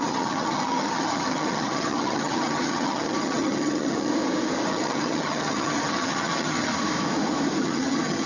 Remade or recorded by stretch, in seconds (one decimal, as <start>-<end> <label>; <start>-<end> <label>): 0.0-4.1 remade; 4.1-4.7 recorded; 4.7-6.7 remade; 6.7-7.6 recorded; 7.6-8.3 remade